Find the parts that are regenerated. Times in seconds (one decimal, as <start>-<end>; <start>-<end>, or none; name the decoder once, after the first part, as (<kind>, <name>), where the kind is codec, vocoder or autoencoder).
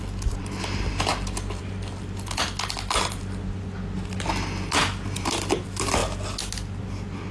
none